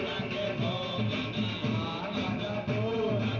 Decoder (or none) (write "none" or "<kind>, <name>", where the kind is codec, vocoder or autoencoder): none